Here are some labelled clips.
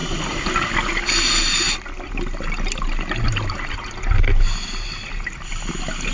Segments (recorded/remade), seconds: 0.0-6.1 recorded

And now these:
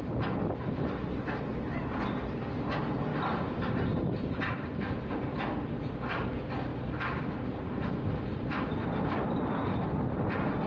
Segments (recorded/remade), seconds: 0.0-3.1 recorded; 3.1-4.0 remade; 4.0-6.7 recorded; 6.7-7.3 remade; 7.3-8.3 recorded; 8.3-10.7 remade

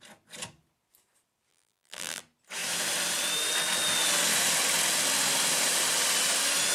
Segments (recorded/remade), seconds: 0.0-1.5 recorded; 1.5-2.2 remade; 2.2-6.7 recorded

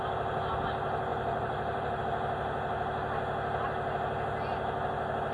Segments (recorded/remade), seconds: 0.0-1.1 recorded; 1.1-2.0 remade; 2.0-5.3 recorded

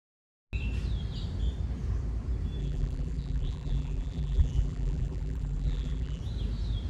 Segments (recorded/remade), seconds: 0.0-2.6 recorded; 2.6-6.2 remade; 6.2-6.9 recorded

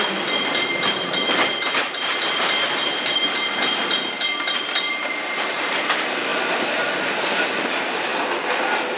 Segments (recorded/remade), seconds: 0.0-6.3 remade; 6.3-7.6 recorded; 7.6-8.1 remade; 8.1-9.0 recorded

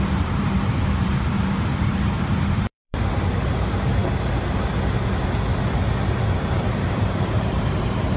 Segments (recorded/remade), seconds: 0.0-4.0 remade; 4.0-6.2 recorded; 6.2-8.2 remade